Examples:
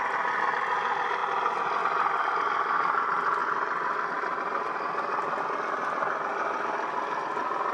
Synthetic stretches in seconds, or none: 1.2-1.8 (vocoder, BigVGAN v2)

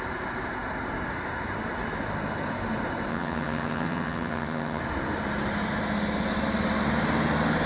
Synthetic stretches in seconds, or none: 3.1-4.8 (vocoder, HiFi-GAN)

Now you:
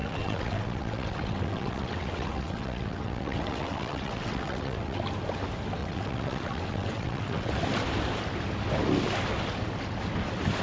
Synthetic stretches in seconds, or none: 0.0-5.0 (vocoder, WaveNeXt); 5.8-7.5

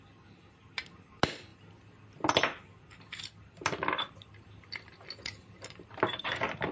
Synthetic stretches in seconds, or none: none

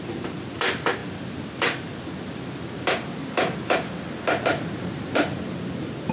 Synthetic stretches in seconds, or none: none

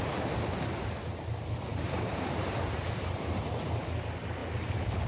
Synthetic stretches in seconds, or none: 1.7-3.5 (vocoder, BigVGAN v2)